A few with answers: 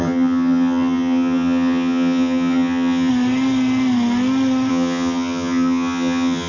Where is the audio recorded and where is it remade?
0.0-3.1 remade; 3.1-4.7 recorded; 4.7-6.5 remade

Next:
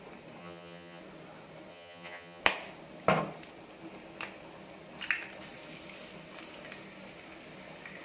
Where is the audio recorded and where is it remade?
0.0-0.4 recorded; 0.4-1.0 remade; 1.0-1.7 recorded; 1.7-2.4 remade; 2.4-8.0 recorded

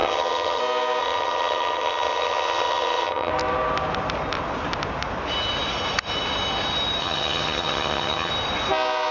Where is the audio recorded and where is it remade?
0.0-0.6 remade; 0.6-1.0 recorded; 1.0-3.3 remade; 3.3-7.0 recorded; 7.0-8.3 remade; 8.3-9.1 recorded

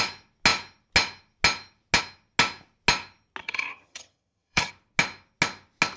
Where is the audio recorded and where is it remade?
0.0-3.4 recorded; 3.4-4.7 remade; 4.7-6.0 recorded

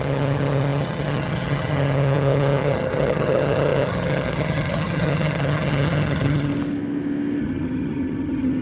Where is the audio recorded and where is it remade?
0.0-6.5 remade; 6.5-7.4 recorded; 7.4-8.6 remade

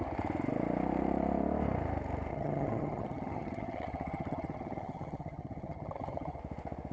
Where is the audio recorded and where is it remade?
0.0-2.3 recorded; 2.3-6.4 remade; 6.4-6.9 recorded